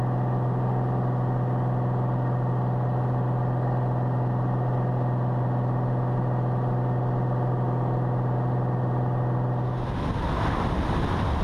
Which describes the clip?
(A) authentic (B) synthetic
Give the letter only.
A